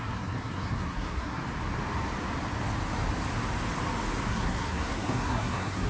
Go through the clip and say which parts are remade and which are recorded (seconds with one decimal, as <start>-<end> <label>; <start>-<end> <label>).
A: 0.0-1.4 remade; 1.4-4.3 recorded; 4.3-5.9 remade